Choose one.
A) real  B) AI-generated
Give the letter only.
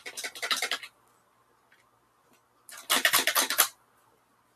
A